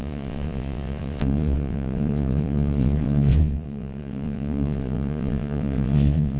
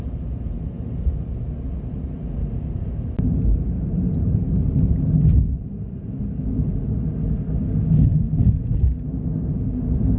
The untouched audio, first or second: second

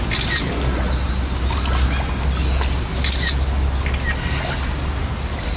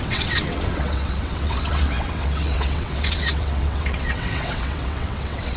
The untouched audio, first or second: first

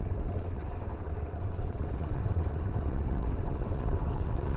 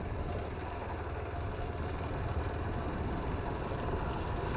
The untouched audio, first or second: second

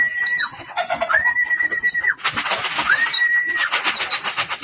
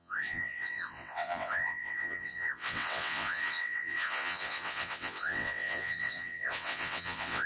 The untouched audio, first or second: first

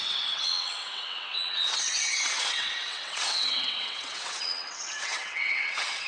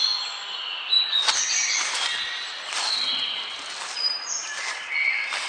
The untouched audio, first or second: second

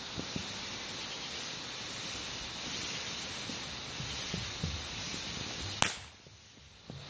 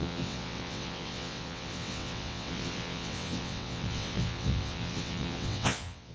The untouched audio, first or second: first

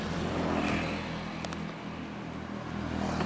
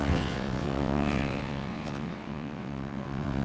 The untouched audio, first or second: first